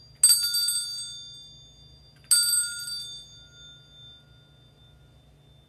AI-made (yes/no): no